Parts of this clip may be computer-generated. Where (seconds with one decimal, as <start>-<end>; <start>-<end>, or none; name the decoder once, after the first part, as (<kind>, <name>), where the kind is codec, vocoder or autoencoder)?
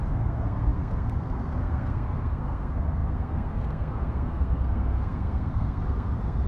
0.0-6.5 (codec, SNAC)